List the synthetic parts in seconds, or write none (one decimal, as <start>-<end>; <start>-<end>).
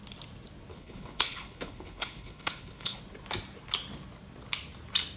0.7-3.0